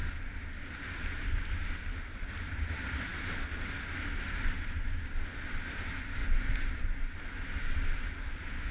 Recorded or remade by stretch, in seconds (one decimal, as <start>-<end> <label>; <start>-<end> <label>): 0.0-6.2 recorded; 6.2-6.8 remade; 6.8-8.7 recorded